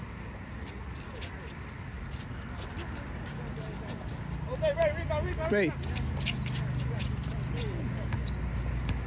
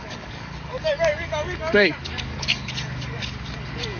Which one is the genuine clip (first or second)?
first